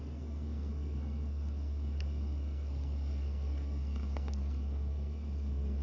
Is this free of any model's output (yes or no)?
no